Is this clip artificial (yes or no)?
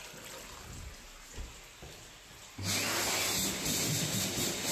no